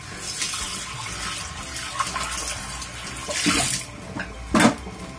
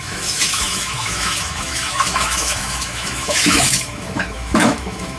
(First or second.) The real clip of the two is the first